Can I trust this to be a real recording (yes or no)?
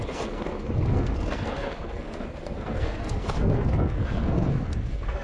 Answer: no